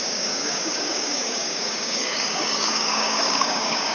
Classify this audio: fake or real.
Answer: fake